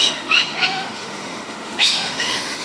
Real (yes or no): no